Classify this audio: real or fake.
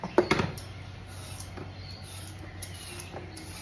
real